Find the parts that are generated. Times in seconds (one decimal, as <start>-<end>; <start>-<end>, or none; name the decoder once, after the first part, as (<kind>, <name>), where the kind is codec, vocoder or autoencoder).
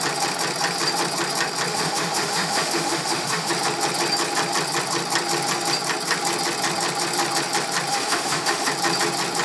1.7-3.5 (autoencoder, DAC-VAE); 7.9-8.7